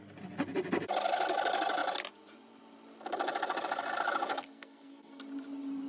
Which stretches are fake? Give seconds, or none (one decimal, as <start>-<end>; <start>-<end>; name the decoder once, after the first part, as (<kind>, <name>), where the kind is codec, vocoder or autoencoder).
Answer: 4.3-5.2 (codec, SNAC)